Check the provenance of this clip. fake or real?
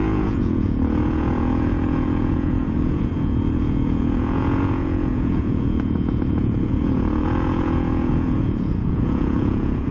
fake